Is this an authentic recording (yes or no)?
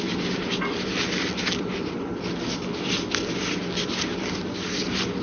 yes